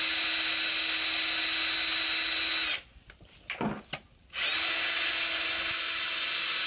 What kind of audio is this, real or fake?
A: real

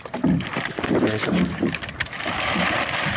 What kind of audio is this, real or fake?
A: real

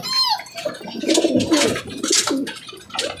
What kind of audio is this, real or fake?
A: real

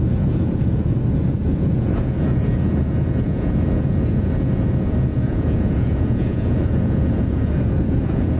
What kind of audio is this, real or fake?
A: fake